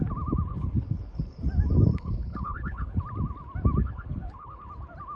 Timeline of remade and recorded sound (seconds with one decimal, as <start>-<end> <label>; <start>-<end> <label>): 0.0-0.5 recorded; 0.5-1.4 remade; 1.4-1.9 recorded; 1.9-3.0 remade; 3.0-3.8 recorded; 3.8-4.7 remade; 4.7-5.2 recorded